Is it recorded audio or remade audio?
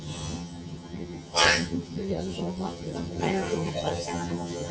remade